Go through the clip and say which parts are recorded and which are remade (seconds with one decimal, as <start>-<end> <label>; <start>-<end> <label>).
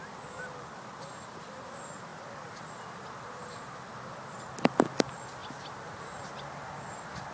0.0-2.1 recorded; 2.1-4.4 remade; 4.4-7.3 recorded